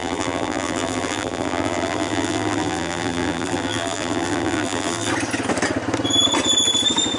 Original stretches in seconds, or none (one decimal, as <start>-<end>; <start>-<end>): 5.1-7.2